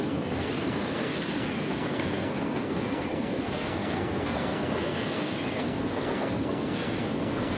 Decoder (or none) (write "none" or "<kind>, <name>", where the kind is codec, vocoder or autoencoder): codec, SNAC